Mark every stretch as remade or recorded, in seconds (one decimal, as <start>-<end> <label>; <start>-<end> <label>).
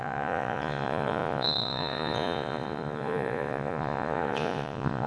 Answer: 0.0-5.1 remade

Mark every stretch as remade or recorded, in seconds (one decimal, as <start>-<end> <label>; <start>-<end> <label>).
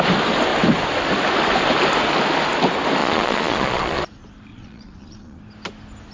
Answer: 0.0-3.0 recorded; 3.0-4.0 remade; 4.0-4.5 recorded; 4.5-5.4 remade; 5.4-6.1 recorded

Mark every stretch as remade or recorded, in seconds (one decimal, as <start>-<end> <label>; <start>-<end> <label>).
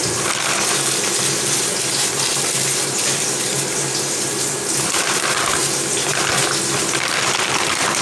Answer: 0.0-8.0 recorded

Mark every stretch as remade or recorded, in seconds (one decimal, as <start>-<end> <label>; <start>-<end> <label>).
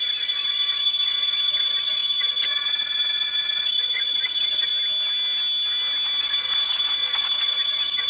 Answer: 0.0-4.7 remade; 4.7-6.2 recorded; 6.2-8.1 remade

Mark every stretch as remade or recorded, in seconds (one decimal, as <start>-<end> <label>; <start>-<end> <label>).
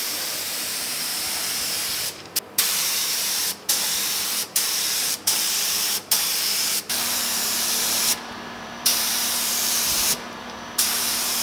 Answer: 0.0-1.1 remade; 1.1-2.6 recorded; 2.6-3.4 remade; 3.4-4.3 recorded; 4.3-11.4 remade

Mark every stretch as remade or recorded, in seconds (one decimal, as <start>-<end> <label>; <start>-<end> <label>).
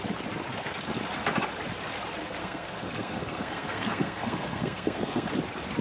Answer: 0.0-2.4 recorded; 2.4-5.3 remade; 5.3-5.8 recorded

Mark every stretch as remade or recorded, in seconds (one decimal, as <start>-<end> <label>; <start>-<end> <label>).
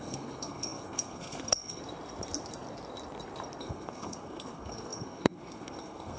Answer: 0.0-1.8 remade; 1.8-3.6 recorded; 3.6-6.2 remade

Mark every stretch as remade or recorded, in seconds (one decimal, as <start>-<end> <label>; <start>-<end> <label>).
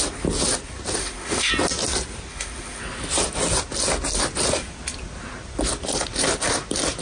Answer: 0.0-1.0 recorded; 1.0-1.5 remade; 1.5-2.3 recorded; 2.3-2.8 remade; 2.8-7.0 recorded